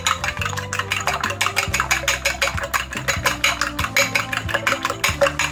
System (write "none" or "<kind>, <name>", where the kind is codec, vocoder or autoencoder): none